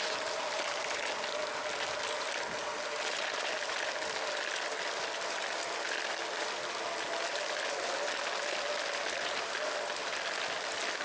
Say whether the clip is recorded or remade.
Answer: recorded